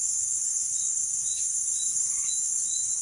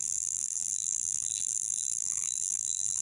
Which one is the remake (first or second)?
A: second